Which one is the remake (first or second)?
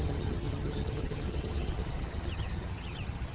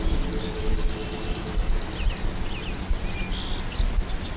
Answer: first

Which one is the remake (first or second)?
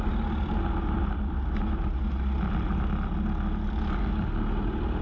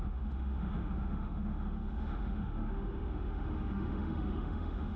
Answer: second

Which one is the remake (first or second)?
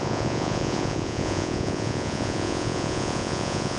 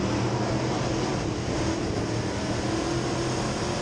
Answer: first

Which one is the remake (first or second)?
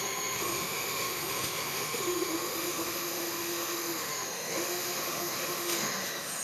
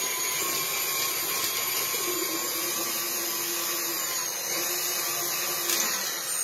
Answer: first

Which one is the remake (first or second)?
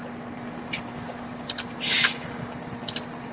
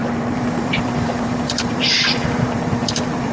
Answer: second